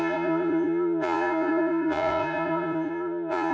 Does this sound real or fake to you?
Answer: fake